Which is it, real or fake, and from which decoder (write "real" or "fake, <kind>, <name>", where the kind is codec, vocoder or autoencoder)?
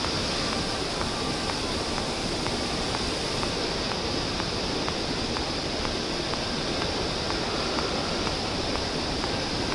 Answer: real